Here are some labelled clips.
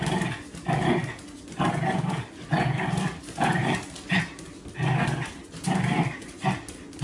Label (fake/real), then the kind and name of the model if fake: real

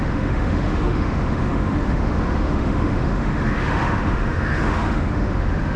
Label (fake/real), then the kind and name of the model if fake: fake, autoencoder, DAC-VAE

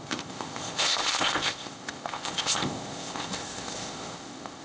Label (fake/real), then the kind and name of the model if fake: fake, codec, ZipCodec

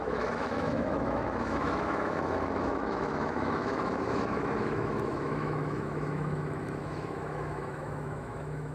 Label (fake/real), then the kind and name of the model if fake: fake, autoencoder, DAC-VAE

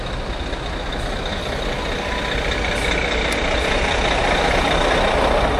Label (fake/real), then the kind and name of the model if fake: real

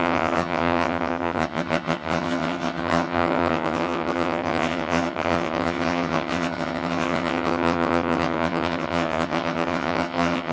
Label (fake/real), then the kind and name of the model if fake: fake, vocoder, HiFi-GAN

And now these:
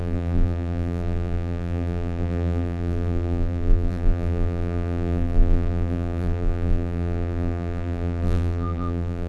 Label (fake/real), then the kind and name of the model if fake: fake, vocoder, BigVGAN v2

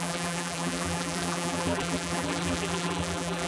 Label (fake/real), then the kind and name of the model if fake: fake, vocoder, BigVGAN v2